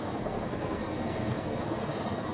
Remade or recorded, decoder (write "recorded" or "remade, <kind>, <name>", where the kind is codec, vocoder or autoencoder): remade, codec, SNAC